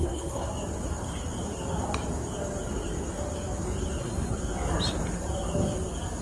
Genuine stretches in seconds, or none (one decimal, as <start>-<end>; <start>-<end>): 0.5-4.0; 4.4-6.2